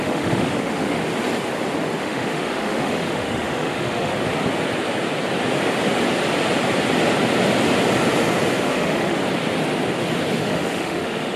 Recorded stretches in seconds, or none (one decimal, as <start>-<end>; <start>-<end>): 1.0-2.0; 4.1-8.6; 9.2-10.4